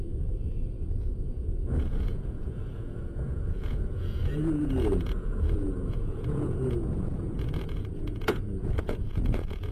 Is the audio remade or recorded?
remade